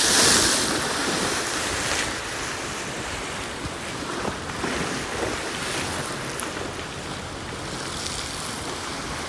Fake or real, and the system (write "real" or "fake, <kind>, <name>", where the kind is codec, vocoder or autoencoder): real